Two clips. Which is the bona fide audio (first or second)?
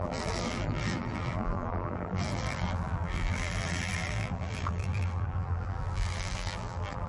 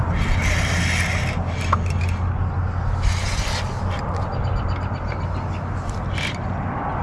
second